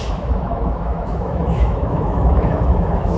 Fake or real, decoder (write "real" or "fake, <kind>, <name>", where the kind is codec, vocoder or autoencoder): fake, autoencoder, DAC-VAE